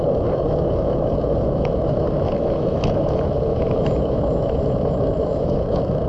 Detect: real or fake fake